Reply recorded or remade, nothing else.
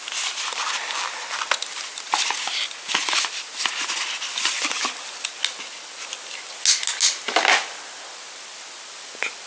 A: recorded